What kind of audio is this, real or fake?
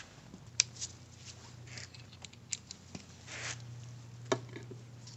real